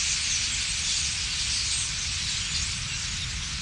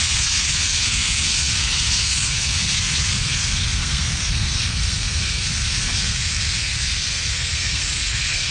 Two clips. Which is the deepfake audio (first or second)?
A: second